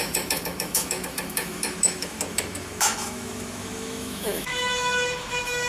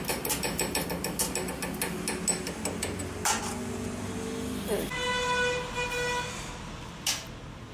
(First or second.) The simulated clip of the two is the first